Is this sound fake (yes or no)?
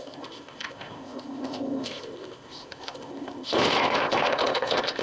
yes